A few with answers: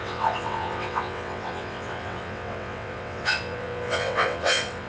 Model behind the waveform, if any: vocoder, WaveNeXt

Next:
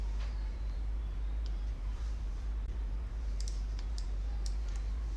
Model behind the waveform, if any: vocoder, BigVGAN v2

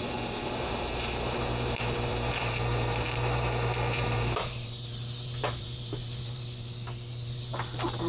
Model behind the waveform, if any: vocoder, BigVGAN v2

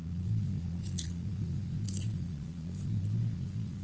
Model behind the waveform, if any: vocoder, Vocos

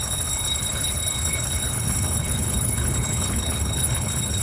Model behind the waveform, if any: codec, HILCodec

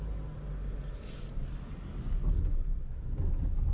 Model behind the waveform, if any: none